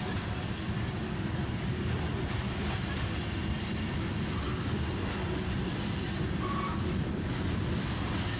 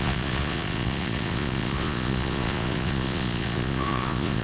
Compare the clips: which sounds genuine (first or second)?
first